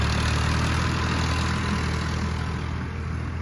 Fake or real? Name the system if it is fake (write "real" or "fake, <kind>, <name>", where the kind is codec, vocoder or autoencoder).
real